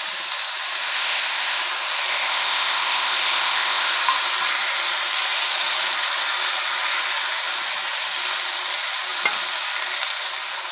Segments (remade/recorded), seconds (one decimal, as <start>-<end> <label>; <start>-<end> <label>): 0.0-0.8 recorded; 0.8-1.6 remade; 1.6-2.1 recorded; 2.1-3.9 remade; 3.9-10.7 recorded